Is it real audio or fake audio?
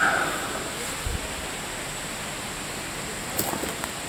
real